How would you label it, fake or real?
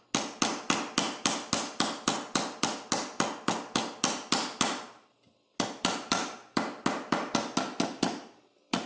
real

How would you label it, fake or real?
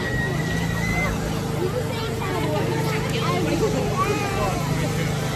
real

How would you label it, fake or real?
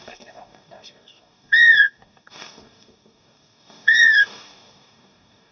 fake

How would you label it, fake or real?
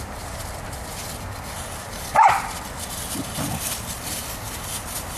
real